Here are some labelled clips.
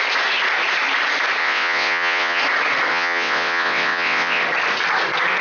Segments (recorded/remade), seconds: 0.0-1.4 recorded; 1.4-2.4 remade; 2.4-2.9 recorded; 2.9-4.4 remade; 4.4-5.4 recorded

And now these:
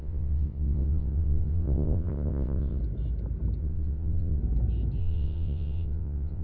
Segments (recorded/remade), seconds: 0.0-2.8 remade; 2.8-3.6 recorded; 3.6-4.4 remade; 4.4-5.0 recorded; 5.0-6.4 remade

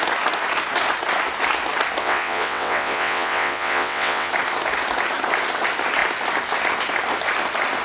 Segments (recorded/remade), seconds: 0.0-2.0 recorded; 2.0-4.3 remade; 4.3-7.8 recorded

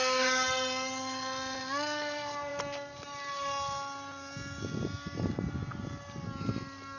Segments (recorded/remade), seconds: 0.0-7.0 recorded

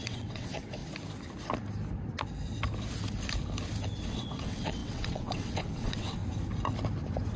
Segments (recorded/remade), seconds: 0.0-0.8 remade; 0.8-4.1 recorded; 4.1-6.2 remade; 6.2-7.4 recorded